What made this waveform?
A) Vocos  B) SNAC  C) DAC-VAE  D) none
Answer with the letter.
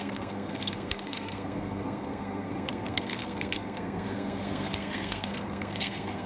B